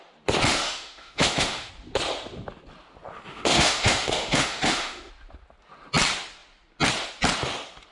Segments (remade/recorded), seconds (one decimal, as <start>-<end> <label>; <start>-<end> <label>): 0.0-0.5 recorded; 0.5-1.7 remade; 1.7-3.3 recorded; 3.3-5.1 remade; 5.1-7.9 recorded